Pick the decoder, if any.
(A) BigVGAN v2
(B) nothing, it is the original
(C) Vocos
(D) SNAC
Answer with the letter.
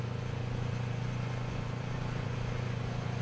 C